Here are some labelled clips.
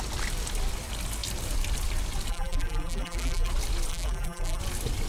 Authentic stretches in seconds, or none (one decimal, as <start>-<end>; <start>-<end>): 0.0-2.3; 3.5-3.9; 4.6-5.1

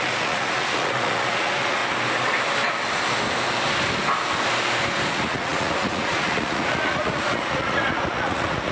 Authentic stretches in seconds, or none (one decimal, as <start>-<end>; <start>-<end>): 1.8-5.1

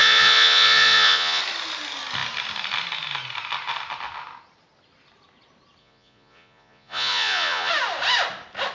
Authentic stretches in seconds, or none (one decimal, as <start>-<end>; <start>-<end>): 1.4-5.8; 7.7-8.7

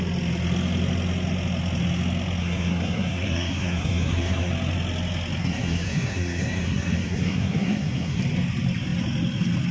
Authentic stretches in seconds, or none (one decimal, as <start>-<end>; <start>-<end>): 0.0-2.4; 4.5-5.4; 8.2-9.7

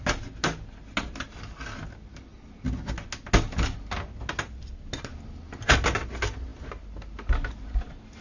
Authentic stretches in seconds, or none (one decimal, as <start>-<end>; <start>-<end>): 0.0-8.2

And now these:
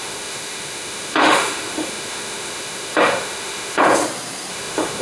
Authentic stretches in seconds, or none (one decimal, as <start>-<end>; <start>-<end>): 3.8-4.5

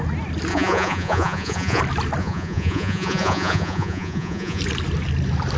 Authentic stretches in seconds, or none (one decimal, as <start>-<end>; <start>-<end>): 0.0-0.5; 1.8-2.2; 4.6-5.6

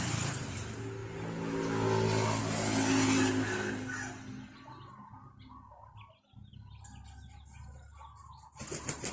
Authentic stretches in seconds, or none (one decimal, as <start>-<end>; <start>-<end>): 0.0-9.1